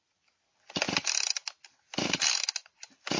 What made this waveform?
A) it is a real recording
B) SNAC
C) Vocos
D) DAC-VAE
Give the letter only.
A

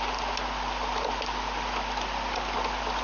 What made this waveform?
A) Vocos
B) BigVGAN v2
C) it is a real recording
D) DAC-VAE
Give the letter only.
C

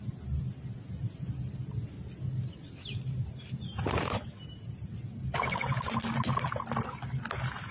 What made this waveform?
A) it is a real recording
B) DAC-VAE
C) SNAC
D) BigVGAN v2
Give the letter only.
A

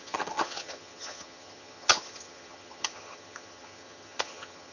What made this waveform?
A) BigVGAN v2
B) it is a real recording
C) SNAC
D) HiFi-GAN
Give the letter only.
D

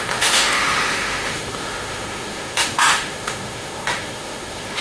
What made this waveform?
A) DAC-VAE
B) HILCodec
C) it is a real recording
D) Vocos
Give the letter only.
A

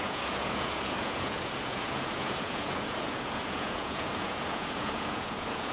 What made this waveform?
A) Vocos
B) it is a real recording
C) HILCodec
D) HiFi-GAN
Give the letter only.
A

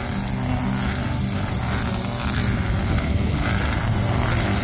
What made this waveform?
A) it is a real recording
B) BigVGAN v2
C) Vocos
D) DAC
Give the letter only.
A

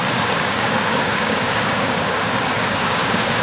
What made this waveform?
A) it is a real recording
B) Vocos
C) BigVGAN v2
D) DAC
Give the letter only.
D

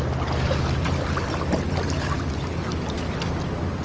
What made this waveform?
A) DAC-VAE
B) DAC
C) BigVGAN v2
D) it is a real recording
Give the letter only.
D